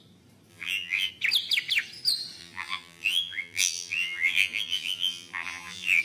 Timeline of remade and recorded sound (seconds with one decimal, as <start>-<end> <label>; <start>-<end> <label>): 0.0-0.5 recorded; 0.5-1.1 remade; 1.1-2.4 recorded; 2.4-6.0 remade